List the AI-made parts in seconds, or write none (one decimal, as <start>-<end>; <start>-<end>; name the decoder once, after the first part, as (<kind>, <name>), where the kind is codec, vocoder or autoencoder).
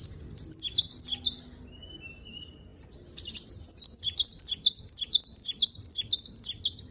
none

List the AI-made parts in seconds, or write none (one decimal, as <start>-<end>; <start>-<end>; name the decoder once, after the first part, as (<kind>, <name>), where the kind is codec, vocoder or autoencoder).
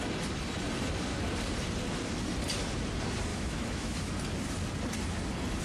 3.3-4.1 (autoencoder, DAC-VAE)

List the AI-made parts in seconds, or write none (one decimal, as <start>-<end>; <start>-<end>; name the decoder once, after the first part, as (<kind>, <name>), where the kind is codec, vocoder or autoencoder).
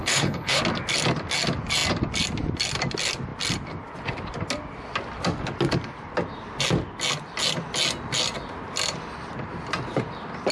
0.0-0.6 (codec, HILCodec)